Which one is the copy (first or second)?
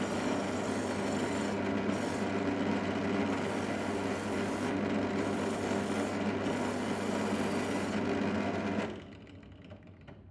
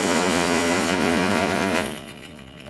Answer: second